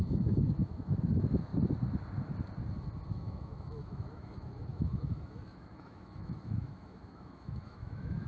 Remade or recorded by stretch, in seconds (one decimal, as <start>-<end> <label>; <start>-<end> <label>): 0.0-1.5 remade; 1.5-3.1 recorded; 3.1-8.3 remade